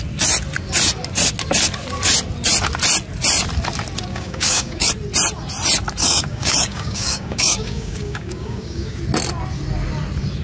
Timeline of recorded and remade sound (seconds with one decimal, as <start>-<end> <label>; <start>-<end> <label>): 0.0-4.1 recorded; 4.1-4.9 remade; 4.9-6.0 recorded; 6.0-9.0 remade; 9.0-10.4 recorded